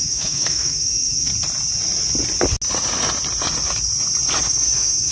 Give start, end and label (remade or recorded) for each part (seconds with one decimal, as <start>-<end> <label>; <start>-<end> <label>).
0.0-1.3 remade; 1.3-4.4 recorded; 4.4-5.1 remade